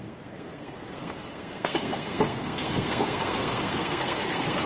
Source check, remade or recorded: remade